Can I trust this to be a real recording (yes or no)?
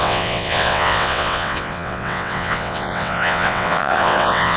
no